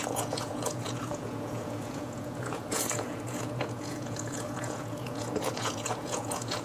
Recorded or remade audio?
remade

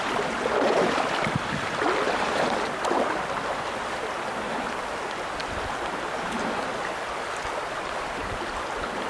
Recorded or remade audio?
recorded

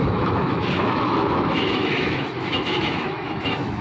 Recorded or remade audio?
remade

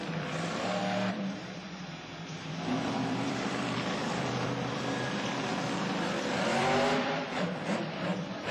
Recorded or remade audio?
remade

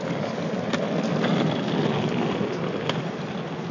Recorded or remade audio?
recorded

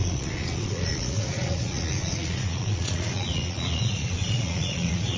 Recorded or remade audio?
remade